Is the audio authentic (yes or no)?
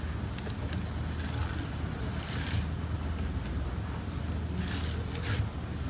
yes